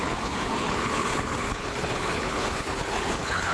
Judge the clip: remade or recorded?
remade